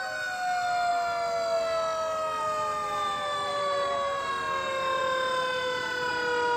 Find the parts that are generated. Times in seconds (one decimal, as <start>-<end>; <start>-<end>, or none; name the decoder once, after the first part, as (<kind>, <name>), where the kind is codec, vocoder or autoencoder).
3.5-4.3 (vocoder, BigVGAN v2)